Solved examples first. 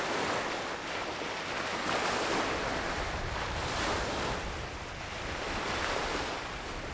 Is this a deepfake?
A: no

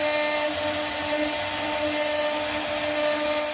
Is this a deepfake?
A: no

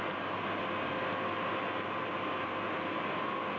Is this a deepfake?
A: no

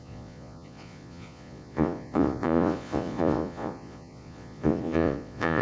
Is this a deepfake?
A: yes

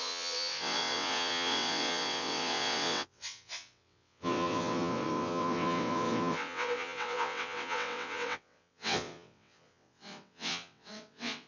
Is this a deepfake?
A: yes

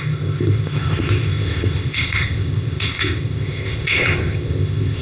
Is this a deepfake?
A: yes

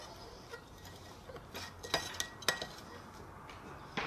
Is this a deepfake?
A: no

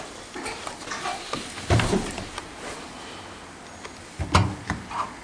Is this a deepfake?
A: no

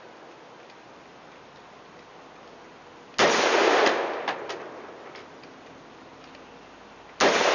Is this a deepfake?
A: no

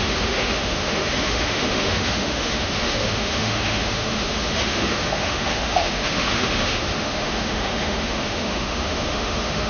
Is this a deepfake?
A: yes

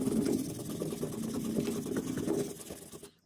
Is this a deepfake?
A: no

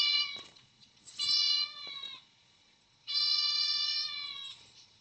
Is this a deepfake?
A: yes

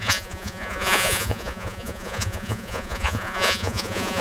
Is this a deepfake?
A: yes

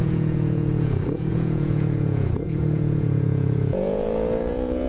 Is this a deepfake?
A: yes